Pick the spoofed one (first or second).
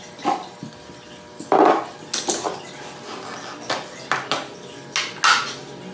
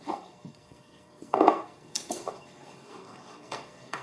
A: second